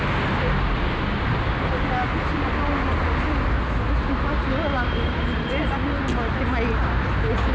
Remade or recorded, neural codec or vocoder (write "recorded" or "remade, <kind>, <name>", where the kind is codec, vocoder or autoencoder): recorded